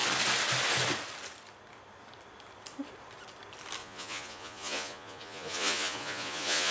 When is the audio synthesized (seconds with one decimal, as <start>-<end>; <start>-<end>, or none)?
3.8-6.7